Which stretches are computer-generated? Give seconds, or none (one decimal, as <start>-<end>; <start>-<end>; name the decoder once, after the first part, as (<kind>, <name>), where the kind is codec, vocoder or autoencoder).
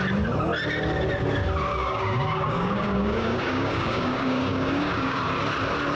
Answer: 1.7-5.2 (codec, DAC)